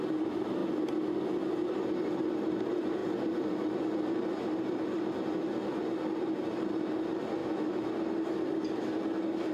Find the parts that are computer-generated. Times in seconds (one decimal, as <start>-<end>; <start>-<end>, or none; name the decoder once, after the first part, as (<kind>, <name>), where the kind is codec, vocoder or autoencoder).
7.4-7.9 (autoencoder, DAC-VAE)